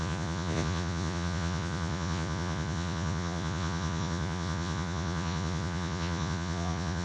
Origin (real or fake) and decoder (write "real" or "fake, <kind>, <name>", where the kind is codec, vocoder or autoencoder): fake, vocoder, Vocos